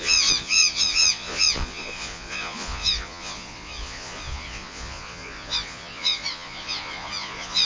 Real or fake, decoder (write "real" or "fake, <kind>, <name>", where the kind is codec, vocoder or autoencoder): fake, vocoder, Vocos